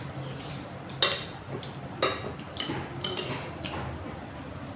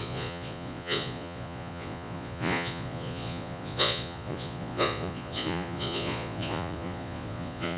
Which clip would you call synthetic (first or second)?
second